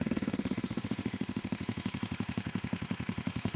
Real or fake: fake